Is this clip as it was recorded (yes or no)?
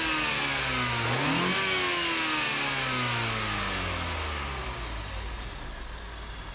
yes